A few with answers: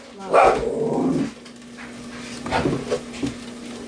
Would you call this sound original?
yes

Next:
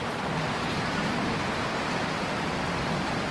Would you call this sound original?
yes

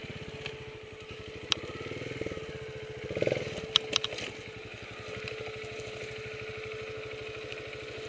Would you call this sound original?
yes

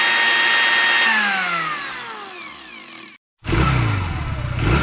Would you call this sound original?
yes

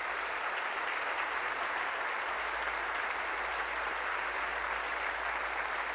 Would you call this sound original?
yes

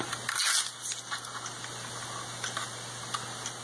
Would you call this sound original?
yes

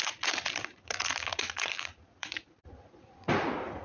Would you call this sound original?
no